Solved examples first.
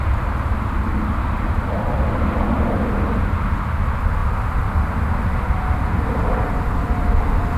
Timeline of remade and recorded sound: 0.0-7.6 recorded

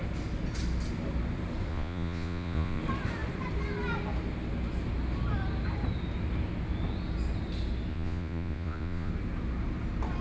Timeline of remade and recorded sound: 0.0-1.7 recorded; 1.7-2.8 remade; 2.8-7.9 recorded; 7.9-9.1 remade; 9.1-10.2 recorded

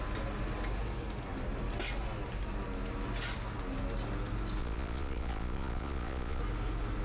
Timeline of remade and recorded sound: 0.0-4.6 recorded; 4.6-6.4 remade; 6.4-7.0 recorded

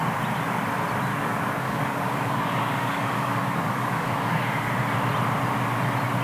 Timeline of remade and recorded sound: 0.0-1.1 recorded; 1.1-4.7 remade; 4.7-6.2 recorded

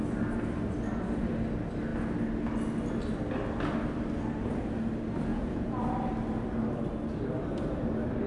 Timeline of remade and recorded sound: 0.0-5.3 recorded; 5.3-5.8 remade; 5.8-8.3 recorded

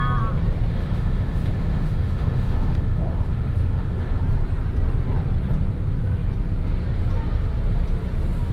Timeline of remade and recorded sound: 0.0-0.7 recorded; 0.7-4.2 remade; 4.2-8.5 recorded